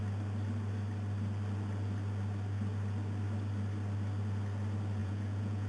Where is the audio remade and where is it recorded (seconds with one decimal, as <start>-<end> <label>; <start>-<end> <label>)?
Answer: 0.0-5.0 recorded; 5.0-5.7 remade